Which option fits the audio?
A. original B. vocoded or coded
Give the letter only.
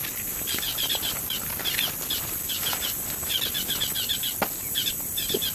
A